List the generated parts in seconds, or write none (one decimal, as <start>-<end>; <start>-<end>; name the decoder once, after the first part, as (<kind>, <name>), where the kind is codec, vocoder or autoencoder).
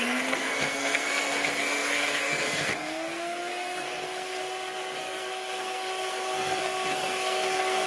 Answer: 0.0-7.9 (codec, SNAC)